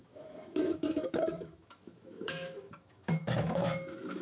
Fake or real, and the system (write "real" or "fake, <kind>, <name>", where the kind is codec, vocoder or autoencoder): fake, autoencoder, DAC-VAE